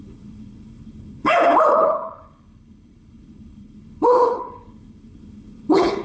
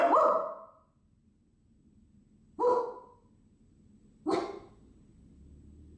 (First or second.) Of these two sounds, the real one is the second